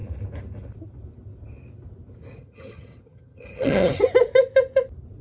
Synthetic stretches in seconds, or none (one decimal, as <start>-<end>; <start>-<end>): 2.4-4.0